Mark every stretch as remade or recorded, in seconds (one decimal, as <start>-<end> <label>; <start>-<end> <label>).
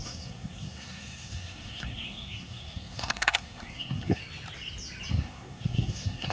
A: 0.0-4.2 remade; 4.2-5.1 recorded; 5.1-6.3 remade